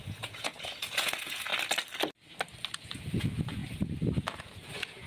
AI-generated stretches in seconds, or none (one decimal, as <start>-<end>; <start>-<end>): 0.0-1.5; 2.8-3.6; 4.2-5.1